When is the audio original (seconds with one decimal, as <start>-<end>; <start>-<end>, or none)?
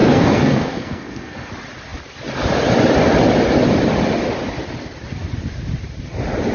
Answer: 1.5-6.5